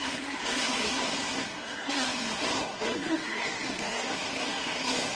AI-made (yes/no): yes